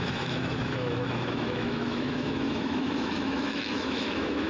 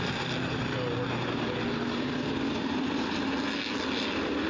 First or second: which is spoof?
first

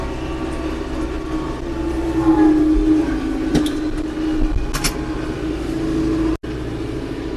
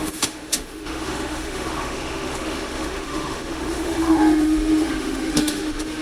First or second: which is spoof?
second